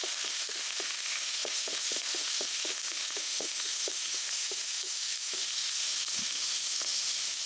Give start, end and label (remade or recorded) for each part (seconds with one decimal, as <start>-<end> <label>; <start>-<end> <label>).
0.0-7.5 remade